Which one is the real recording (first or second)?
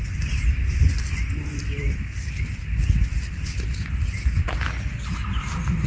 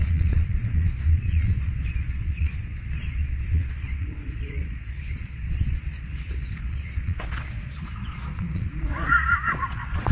first